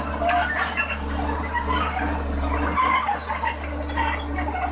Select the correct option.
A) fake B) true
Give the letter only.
B